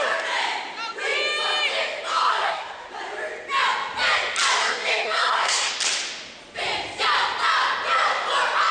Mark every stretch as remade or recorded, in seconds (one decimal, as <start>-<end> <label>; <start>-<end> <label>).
0.0-2.1 recorded; 2.1-2.9 remade; 2.9-4.6 recorded; 4.6-5.7 remade; 5.7-8.7 recorded